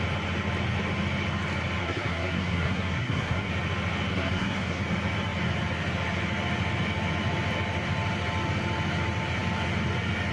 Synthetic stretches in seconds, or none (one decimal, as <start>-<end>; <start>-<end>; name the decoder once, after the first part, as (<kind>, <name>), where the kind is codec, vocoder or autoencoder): 1.8-3.5 (codec, SNAC); 4.1-4.8